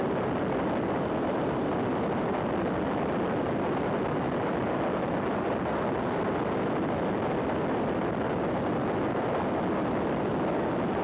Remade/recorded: recorded